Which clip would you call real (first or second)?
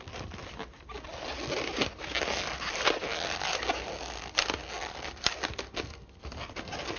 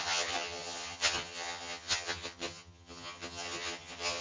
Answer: first